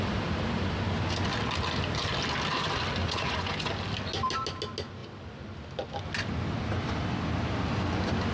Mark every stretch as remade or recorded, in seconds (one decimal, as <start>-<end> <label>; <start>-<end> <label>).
0.0-3.0 recorded; 3.0-3.7 remade; 3.7-8.3 recorded